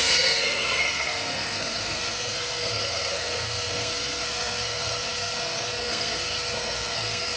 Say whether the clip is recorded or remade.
remade